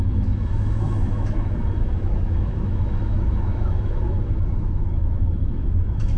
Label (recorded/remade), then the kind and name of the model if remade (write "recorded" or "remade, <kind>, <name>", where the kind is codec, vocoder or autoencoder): remade, autoencoder, DAC-VAE